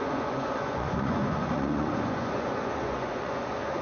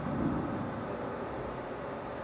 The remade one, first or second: first